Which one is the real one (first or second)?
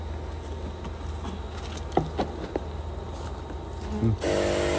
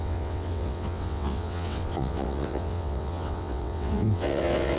first